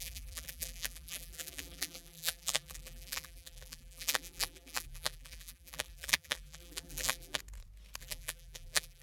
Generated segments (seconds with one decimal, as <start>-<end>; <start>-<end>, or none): 0.0-7.4; 8.0-9.0

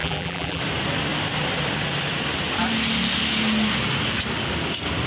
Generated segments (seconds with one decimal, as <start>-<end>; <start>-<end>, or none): 0.0-0.6

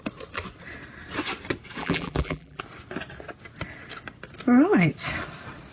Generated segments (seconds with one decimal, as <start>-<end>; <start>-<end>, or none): 1.8-2.6

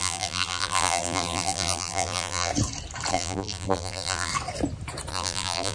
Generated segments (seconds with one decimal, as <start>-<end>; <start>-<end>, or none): 0.0-2.5; 3.1-4.3; 5.1-5.7

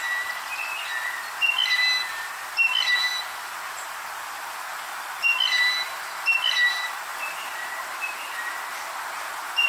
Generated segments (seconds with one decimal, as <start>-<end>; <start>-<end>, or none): 3.1-4.0

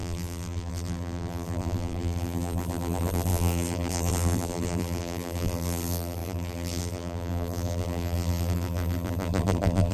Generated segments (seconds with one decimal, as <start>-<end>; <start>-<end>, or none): 0.0-9.9